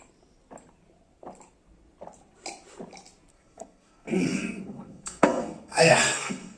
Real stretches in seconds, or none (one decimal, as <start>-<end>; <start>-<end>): 0.0-3.3